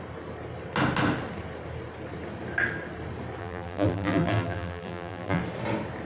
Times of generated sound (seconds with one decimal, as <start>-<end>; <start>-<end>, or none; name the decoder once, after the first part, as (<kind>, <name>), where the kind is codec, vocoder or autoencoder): 3.4-5.4 (vocoder, BigVGAN v2)

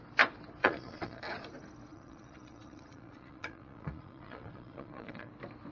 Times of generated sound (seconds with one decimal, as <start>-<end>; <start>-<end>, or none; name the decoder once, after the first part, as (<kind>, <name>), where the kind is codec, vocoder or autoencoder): 0.6-1.2 (vocoder, Vocos); 1.9-5.3